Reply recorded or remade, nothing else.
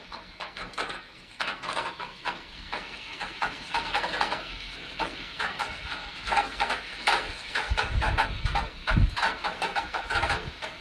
remade